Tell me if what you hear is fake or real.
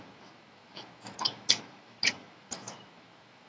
fake